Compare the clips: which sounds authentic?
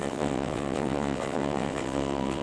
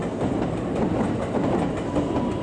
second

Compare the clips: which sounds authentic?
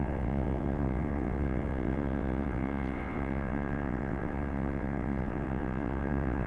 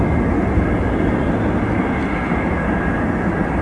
second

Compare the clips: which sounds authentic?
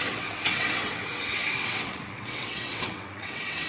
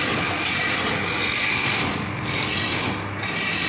second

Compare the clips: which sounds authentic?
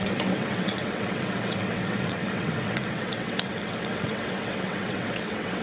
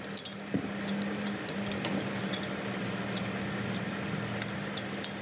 second